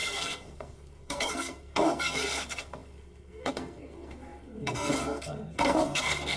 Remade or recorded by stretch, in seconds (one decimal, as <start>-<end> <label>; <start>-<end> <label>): 0.0-6.4 remade